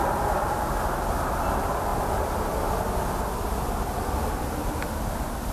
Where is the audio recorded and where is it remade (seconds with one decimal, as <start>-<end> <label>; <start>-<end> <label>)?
0.0-5.5 recorded